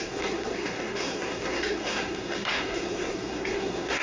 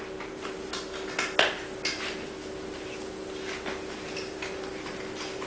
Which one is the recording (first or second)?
second